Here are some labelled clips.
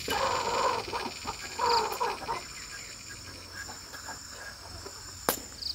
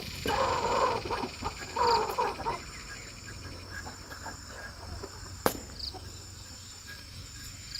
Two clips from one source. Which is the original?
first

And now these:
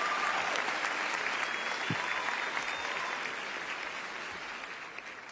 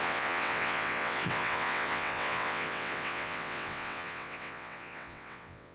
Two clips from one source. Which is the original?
first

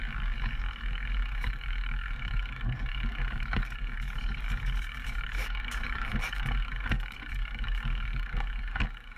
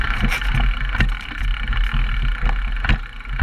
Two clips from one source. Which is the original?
second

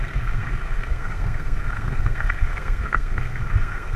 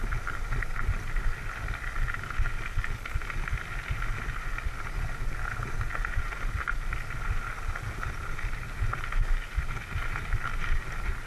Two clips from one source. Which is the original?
second